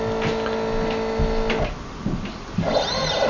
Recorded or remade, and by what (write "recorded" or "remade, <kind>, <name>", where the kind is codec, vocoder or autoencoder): recorded